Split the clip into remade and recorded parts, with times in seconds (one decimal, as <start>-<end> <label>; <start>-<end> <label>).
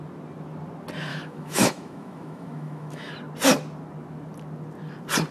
0.0-1.1 recorded; 1.1-3.1 remade; 3.1-5.3 recorded